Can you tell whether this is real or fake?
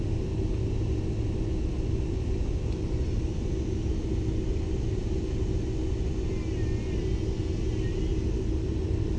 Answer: real